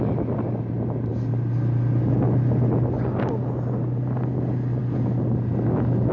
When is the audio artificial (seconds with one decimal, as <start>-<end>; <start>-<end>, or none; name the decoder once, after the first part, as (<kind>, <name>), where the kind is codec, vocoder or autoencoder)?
none